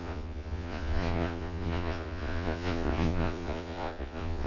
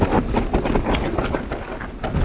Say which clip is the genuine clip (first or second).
second